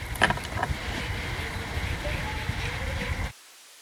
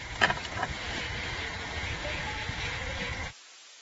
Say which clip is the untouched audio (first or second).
first